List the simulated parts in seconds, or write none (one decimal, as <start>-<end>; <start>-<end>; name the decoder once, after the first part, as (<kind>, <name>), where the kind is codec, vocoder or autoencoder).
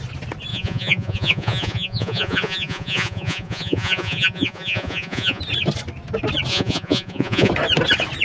0.5-5.4 (vocoder, Vocos); 6.5-7.5